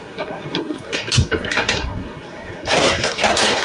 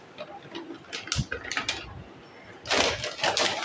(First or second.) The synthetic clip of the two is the first